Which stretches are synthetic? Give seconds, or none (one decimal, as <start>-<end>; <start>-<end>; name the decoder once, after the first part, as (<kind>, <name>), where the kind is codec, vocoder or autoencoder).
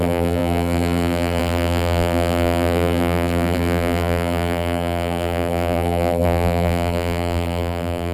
0.0-8.1 (vocoder, BigVGAN v2)